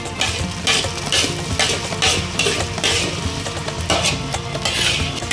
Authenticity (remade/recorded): recorded